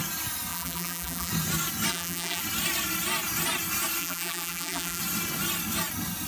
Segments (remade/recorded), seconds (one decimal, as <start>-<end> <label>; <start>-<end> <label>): 0.0-0.5 recorded; 0.5-1.3 remade; 1.3-1.9 recorded; 1.9-2.4 remade; 2.4-4.0 recorded; 4.0-5.0 remade; 5.0-6.3 recorded